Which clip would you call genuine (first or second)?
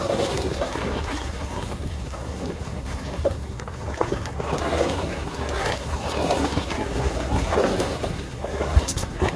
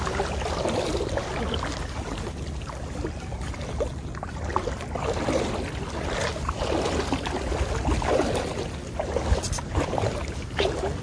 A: second